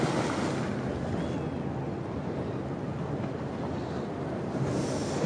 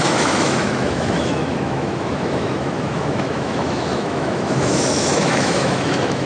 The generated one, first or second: second